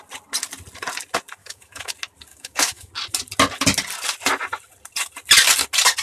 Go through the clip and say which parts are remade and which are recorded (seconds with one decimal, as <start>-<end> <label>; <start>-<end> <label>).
0.0-1.4 recorded; 1.4-1.9 remade; 1.9-2.3 recorded; 2.3-2.9 remade; 2.9-6.0 recorded